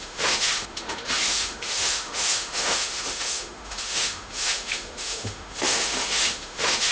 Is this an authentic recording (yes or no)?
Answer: no